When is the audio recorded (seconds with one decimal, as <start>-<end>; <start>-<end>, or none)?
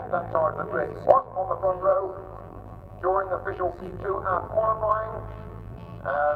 none